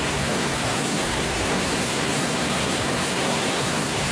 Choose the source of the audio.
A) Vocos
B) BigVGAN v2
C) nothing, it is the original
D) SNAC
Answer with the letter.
D